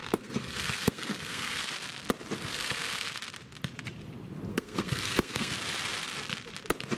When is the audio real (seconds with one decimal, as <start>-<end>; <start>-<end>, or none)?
1.7-2.5; 3.2-4.5; 5.5-7.0